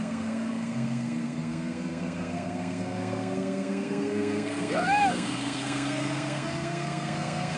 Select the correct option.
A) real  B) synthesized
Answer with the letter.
B